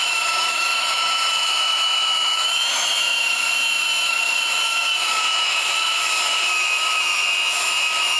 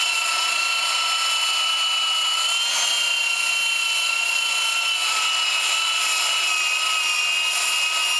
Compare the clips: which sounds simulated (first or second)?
first